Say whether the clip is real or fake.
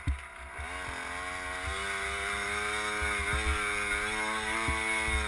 real